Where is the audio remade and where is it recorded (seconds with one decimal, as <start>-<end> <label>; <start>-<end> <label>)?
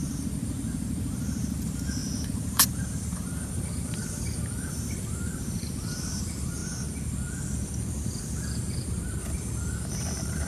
0.0-6.6 remade; 6.6-9.9 recorded; 9.9-10.5 remade